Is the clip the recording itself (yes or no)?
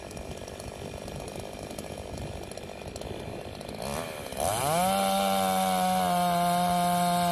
yes